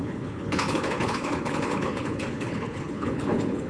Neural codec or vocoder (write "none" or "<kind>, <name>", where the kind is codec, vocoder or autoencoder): codec, HILCodec